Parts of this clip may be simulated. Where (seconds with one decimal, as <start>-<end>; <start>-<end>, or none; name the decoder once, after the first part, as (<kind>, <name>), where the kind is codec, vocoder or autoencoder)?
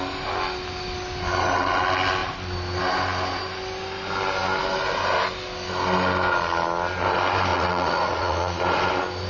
7.5-8.6 (vocoder, Vocos)